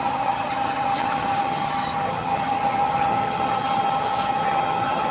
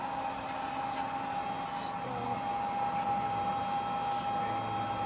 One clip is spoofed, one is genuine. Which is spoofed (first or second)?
first